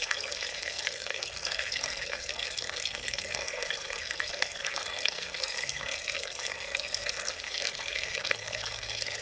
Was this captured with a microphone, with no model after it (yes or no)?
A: no